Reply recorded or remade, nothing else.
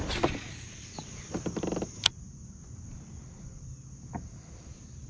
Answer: recorded